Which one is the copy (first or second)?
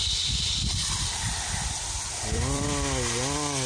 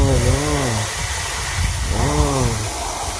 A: first